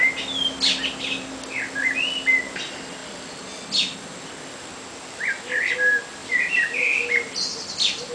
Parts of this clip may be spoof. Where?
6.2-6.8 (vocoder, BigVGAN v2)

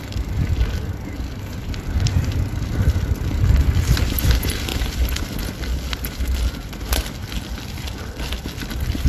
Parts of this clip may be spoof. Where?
none

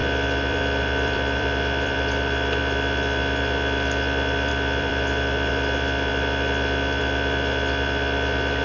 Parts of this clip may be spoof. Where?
0.0-2.6 (vocoder, BigVGAN v2); 4.5-5.5

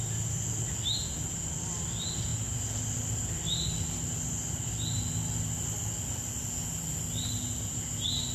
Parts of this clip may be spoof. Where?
none

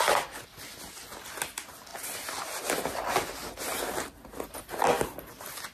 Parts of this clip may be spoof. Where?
none

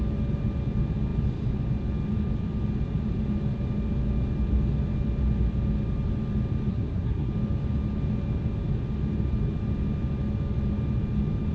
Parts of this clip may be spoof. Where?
6.7-7.3 (codec, SNAC)

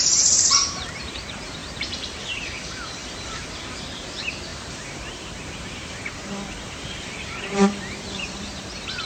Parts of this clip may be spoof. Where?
0.0-9.1 (vocoder, BigVGAN v2)